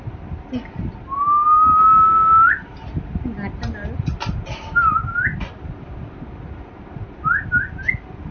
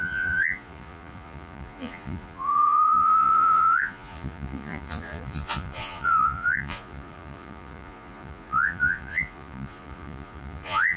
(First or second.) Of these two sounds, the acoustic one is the first